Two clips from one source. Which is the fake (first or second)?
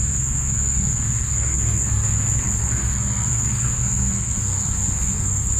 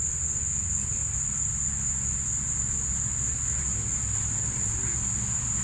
first